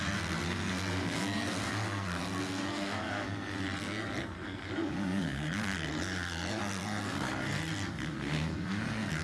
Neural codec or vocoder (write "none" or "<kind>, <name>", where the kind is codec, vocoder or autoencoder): codec, SNAC